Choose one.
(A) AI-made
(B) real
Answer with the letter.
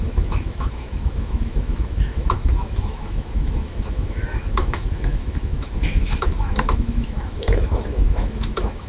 A